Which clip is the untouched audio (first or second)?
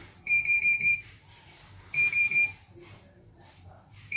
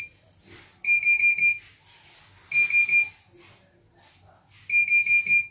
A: second